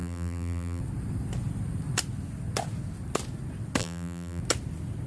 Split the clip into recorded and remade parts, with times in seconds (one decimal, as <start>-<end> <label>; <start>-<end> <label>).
0.0-0.8 remade; 0.8-3.8 recorded; 3.8-4.4 remade; 4.4-5.1 recorded